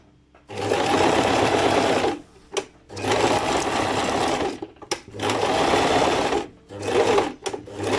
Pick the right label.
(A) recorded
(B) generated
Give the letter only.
A